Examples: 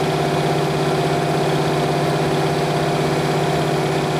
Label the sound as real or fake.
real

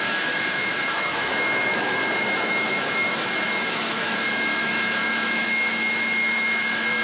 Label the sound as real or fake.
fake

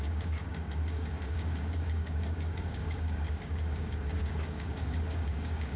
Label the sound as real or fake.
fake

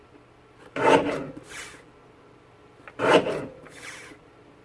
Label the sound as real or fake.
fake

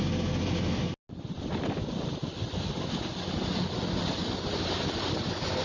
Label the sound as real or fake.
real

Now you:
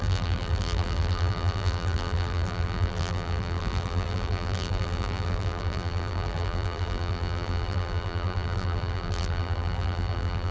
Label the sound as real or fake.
fake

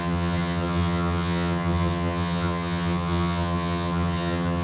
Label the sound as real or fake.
fake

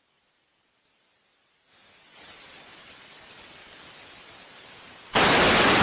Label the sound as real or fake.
fake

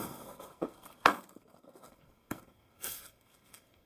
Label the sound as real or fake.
fake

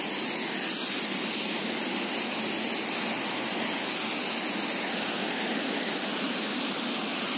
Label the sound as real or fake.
real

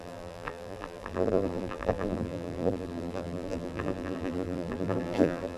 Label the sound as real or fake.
fake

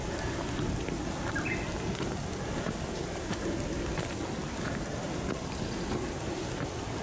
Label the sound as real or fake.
real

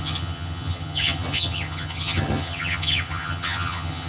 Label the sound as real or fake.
fake